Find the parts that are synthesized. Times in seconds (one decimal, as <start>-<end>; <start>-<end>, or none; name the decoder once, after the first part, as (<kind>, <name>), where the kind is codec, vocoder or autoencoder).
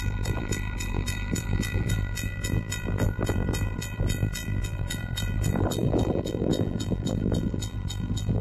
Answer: 0.0-8.4 (vocoder, BigVGAN v2)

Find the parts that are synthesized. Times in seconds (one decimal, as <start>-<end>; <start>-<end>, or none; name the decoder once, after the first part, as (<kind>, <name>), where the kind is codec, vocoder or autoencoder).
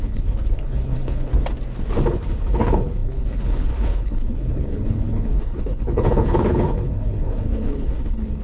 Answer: 0.0-1.3 (codec, HILCodec); 2.1-8.4